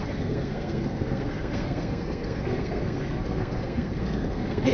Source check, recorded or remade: remade